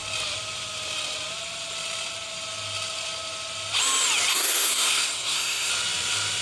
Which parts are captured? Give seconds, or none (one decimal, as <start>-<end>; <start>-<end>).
0.0-4.3; 5.7-6.4